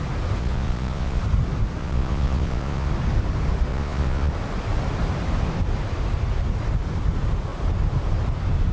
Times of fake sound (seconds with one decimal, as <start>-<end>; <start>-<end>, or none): 0.4-1.2; 1.8-2.9; 3.7-4.3

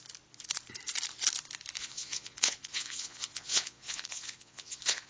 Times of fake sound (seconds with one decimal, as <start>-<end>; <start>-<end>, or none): 1.8-5.1

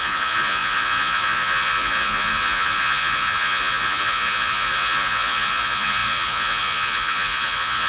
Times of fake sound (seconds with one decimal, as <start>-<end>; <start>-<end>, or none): 0.0-7.9

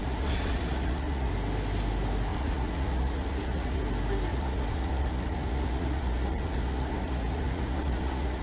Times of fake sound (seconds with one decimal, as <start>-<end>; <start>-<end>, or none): 0.0-1.3; 2.3-3.8; 4.3-8.4